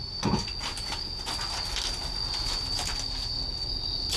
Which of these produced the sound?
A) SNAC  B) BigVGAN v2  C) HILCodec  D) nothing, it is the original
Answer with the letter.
D